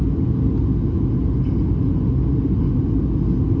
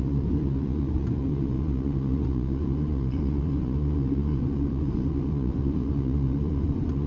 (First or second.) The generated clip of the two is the second